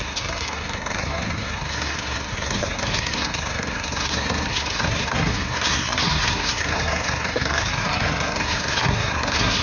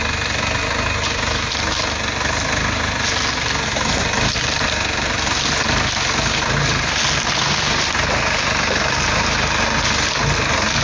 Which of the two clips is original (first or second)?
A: second